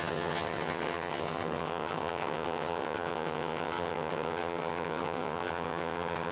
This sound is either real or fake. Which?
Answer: fake